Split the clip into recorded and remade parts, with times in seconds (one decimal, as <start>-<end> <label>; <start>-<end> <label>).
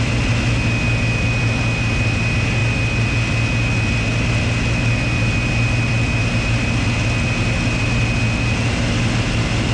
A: 0.0-9.7 recorded